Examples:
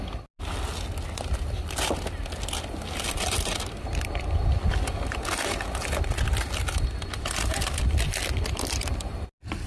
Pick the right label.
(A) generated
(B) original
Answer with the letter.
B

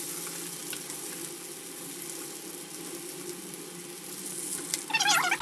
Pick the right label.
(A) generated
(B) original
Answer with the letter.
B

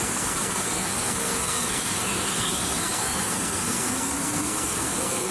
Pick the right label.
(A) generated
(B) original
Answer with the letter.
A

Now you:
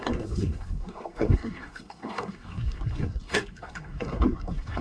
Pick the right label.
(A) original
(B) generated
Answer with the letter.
B